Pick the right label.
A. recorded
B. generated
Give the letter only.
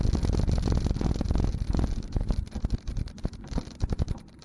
A